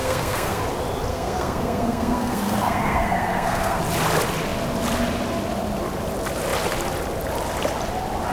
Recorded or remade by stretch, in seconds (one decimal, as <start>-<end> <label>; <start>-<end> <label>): 0.0-0.6 remade; 0.6-1.1 recorded; 1.1-3.8 remade; 3.8-8.3 recorded